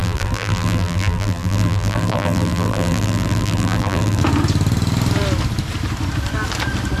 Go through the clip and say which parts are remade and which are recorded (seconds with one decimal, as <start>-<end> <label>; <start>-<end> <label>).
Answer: 0.0-4.2 remade; 4.2-7.0 recorded